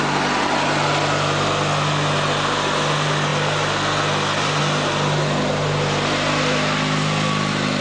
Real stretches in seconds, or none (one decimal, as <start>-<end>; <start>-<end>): 0.0-7.8

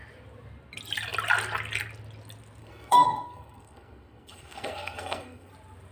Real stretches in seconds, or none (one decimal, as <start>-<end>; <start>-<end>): 0.0-2.6; 5.5-5.9

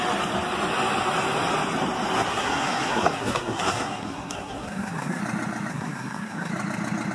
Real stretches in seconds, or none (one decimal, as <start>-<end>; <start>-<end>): 0.0-2.3; 5.2-5.7; 6.5-7.1

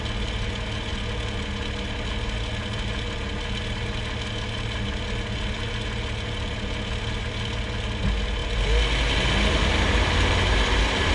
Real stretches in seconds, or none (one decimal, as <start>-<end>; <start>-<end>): 0.0-11.1

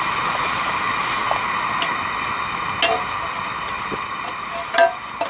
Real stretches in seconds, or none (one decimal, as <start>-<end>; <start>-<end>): 0.0-5.3